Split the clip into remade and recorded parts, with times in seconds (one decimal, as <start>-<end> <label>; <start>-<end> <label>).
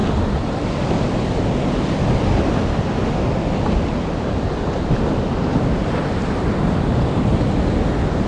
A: 0.0-5.5 recorded; 5.5-6.7 remade; 6.7-8.3 recorded